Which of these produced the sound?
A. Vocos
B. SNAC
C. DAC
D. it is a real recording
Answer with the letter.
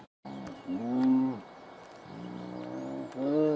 D